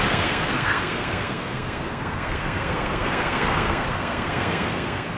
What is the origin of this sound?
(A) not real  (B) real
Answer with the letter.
A